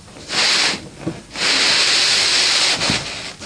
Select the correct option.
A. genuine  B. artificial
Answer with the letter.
A